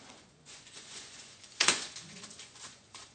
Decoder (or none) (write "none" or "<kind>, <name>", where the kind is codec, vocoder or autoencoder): vocoder, Vocos